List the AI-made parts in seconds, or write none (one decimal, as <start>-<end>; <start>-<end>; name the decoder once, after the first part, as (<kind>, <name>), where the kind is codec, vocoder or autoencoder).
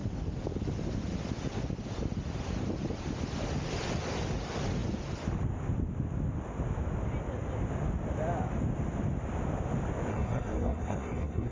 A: 10.1-11.5 (codec, SNAC)